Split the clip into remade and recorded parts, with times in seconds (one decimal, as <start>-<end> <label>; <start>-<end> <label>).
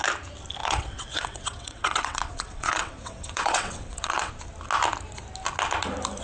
0.0-0.6 recorded; 0.6-4.3 remade; 4.3-6.2 recorded